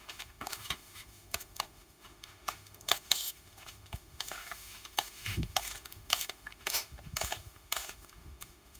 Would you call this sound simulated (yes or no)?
yes